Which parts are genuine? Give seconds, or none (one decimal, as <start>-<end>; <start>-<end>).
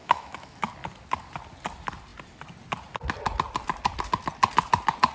0.7-5.1